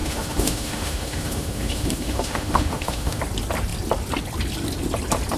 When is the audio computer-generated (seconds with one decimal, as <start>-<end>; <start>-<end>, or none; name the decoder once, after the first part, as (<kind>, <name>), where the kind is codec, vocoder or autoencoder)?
0.0-3.2 (autoencoder, DAC-VAE)